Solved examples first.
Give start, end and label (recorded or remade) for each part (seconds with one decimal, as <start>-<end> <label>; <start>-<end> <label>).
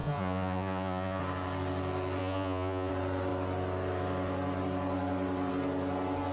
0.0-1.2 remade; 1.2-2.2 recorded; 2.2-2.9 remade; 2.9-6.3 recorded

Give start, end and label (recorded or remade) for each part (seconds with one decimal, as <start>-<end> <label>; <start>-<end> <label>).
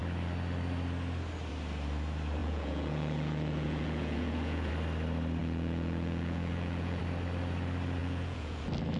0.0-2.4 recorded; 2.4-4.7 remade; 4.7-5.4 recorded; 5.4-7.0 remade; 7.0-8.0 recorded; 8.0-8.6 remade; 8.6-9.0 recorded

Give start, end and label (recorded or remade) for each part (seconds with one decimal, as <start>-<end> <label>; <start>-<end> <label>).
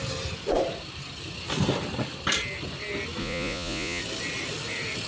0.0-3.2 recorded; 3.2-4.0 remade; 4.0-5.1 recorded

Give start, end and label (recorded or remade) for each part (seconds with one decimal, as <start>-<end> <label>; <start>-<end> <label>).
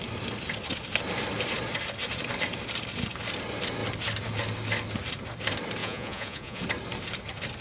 0.0-5.8 recorded; 5.8-6.6 remade; 6.6-7.6 recorded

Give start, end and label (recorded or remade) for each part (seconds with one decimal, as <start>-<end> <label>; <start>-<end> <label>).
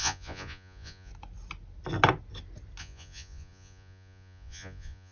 0.0-1.1 remade; 1.1-2.8 recorded; 2.8-5.1 remade